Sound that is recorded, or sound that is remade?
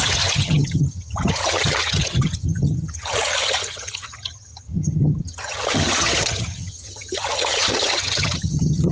remade